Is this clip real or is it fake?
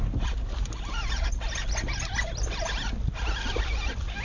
real